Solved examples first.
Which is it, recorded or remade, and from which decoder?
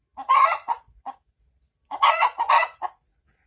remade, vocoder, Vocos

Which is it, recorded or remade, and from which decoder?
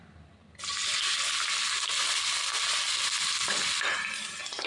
recorded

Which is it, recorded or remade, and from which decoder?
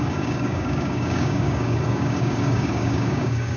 remade, codec, DAC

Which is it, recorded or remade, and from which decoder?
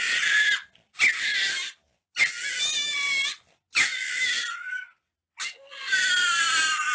recorded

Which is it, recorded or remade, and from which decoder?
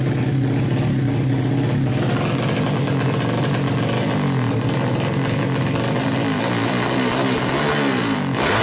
recorded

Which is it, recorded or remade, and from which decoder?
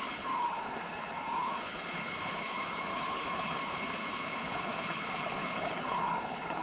remade, codec, HILCodec